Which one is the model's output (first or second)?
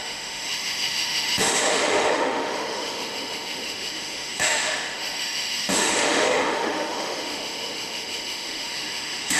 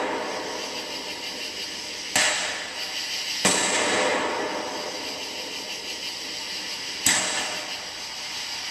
first